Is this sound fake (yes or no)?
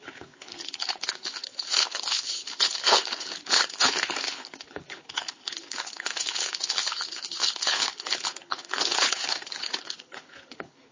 yes